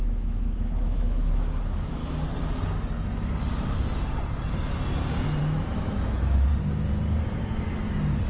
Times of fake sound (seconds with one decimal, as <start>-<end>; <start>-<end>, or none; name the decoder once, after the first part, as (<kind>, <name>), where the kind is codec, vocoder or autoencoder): 0.0-2.0 (autoencoder, DAC-VAE); 5.4-6.5